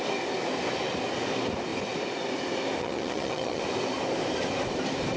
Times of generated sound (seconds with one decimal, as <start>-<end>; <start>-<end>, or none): 2.8-3.6

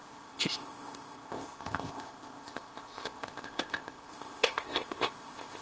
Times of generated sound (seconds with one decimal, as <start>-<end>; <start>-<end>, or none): 0.0-5.6

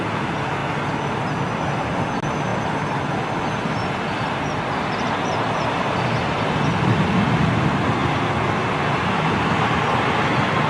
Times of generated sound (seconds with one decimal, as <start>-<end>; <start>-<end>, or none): none

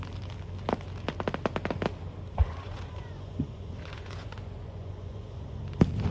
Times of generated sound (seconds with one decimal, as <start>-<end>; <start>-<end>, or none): 2.4-5.6